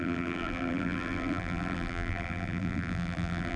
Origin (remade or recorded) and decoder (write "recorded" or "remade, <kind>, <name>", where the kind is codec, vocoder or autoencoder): remade, vocoder, BigVGAN v2